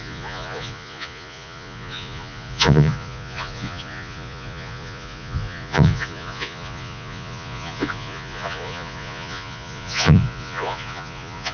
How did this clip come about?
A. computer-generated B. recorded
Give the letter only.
A